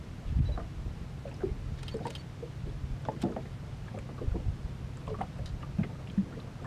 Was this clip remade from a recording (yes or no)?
no